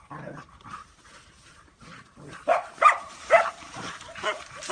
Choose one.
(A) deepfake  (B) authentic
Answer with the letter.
A